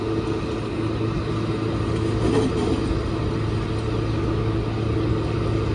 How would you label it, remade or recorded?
recorded